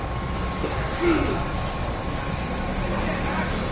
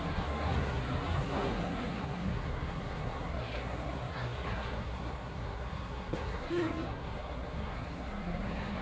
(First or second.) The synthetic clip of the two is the second